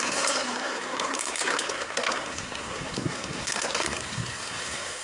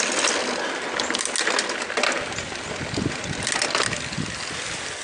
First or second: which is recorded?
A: second